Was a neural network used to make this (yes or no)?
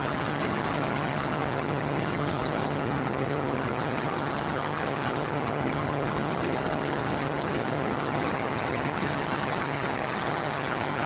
yes